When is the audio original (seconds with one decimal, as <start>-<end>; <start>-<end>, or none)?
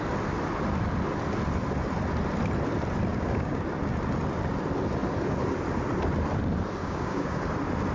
0.0-3.1; 3.6-6.8; 7.4-7.9